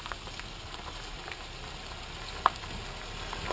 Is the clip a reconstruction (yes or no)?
no